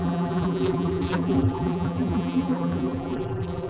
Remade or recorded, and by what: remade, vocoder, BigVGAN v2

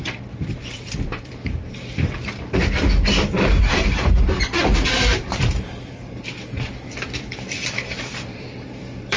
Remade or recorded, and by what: remade, vocoder, BigVGAN v2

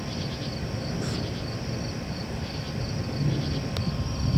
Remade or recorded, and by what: recorded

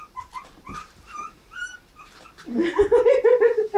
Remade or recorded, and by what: remade, vocoder, BigVGAN v2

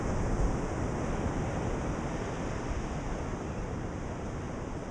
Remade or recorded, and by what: recorded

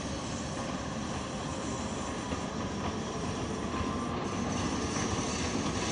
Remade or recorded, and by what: remade, vocoder, BigVGAN v2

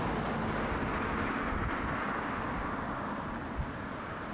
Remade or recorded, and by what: recorded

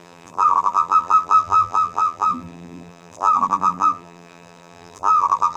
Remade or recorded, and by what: remade, vocoder, BigVGAN v2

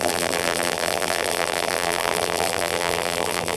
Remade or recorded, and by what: remade, vocoder, BigVGAN v2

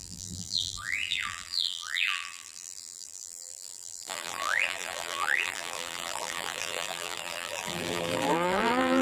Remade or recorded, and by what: remade, vocoder, BigVGAN v2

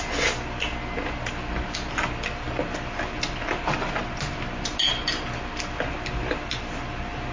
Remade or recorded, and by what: recorded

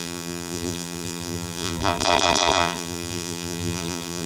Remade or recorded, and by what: remade, vocoder, BigVGAN v2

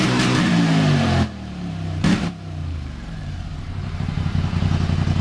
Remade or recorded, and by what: remade, vocoder, BigVGAN v2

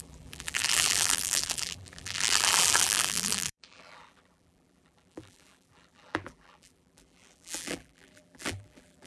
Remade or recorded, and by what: remade, vocoder, BigVGAN v2